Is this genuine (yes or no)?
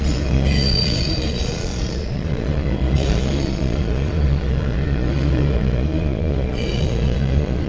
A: no